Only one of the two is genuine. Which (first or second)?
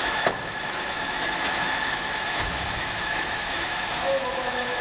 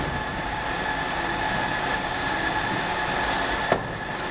second